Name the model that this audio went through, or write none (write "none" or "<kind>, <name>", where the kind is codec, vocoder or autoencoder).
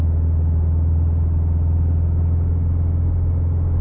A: none